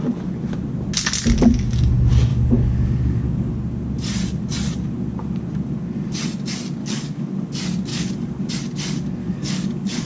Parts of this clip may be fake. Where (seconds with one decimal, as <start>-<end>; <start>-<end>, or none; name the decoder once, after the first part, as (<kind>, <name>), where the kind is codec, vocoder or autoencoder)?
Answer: 2.3-3.5 (codec, DAC); 6.8-7.3; 7.9-8.5; 9.2-10.1